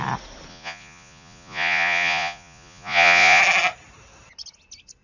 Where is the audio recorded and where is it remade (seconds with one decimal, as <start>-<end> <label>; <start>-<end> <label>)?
0.0-0.5 recorded; 0.5-3.4 remade; 3.4-5.0 recorded